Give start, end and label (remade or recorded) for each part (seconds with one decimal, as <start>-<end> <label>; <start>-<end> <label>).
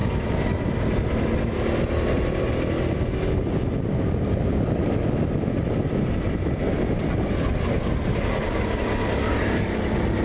0.0-10.2 recorded